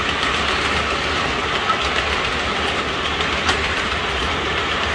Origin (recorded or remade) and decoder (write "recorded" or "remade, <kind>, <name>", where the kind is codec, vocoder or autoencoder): remade, vocoder, BigVGAN v2